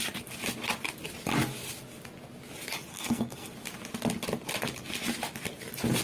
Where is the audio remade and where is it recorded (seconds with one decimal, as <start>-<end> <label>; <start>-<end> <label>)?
0.0-2.9 recorded; 2.9-3.5 remade; 3.5-6.0 recorded